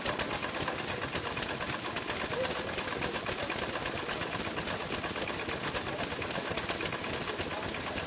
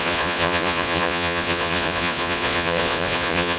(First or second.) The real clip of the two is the first